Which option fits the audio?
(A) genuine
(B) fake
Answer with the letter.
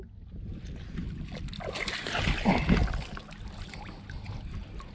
A